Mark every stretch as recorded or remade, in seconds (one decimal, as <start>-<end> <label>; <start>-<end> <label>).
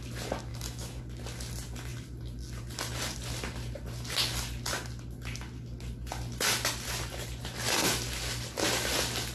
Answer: 0.0-0.5 recorded; 0.5-1.0 remade; 1.0-9.3 recorded